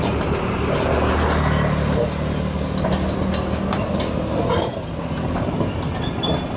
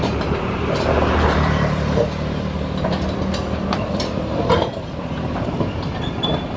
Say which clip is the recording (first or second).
first